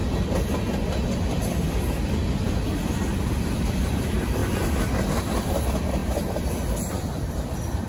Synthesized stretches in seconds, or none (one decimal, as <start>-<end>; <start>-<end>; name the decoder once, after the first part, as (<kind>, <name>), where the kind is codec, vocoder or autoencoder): 3.5-4.4 (vocoder, BigVGAN v2); 5.0-7.9